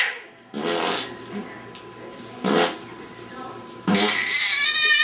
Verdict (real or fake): real